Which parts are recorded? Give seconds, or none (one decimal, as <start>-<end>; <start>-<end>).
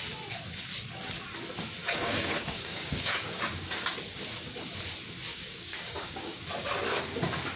0.0-1.8; 3.4-5.3; 6.4-7.6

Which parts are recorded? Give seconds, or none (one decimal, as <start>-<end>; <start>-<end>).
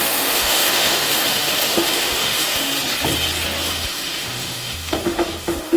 2.7-3.7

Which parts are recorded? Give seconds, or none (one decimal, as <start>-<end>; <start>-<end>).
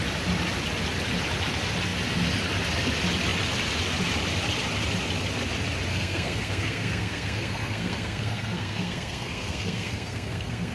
0.0-5.9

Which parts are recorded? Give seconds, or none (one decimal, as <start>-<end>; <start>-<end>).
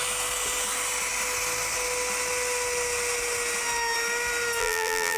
0.0-4.6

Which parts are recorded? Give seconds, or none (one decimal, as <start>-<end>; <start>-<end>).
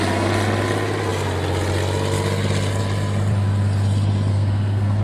0.0-4.3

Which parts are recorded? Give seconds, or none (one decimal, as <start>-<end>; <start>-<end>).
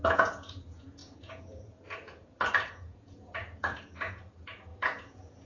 none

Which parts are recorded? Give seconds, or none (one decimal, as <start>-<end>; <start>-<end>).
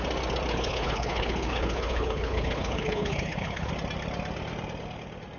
0.0-0.5; 3.7-5.4